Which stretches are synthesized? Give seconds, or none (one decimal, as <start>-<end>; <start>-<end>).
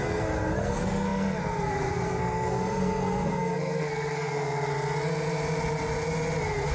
0.0-4.7